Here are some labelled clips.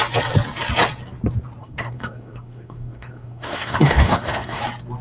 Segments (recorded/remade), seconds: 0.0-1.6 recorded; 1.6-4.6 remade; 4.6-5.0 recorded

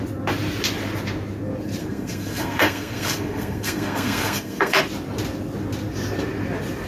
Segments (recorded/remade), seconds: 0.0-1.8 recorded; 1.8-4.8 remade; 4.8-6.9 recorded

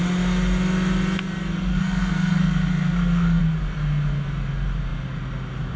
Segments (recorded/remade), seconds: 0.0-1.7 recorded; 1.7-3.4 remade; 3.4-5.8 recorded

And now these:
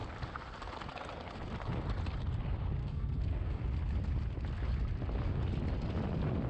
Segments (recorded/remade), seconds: 0.0-2.8 recorded; 2.8-3.6 remade; 3.6-6.5 recorded

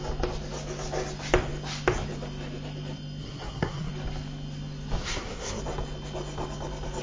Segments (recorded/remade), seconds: 0.0-3.2 recorded; 3.2-3.9 remade; 3.9-5.0 recorded; 5.0-5.6 remade; 5.6-7.0 recorded

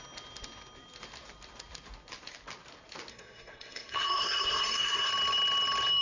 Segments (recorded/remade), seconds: 0.0-3.1 recorded; 3.1-5.1 remade; 5.1-6.0 recorded

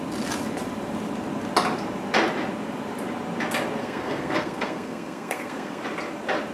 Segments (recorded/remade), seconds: 0.0-3.8 recorded; 3.8-5.8 remade; 5.8-6.5 recorded

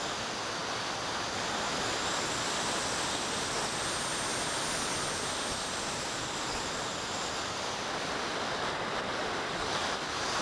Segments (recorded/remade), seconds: 0.0-10.4 recorded